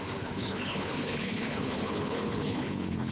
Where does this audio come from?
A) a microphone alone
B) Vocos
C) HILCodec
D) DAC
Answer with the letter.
C